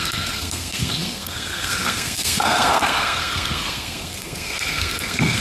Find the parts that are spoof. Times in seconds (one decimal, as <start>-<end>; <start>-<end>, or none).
0.0-5.4